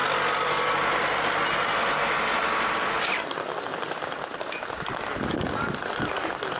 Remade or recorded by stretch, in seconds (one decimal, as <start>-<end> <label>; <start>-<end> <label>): 0.0-6.6 recorded